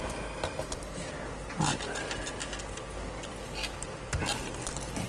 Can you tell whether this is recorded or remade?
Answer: recorded